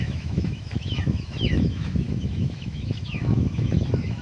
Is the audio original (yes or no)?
no